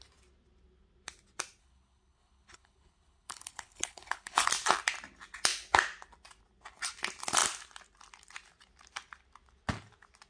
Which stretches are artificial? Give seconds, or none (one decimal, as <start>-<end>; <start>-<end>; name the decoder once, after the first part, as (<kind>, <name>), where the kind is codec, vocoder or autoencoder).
1.6-4.5 (codec, HILCodec)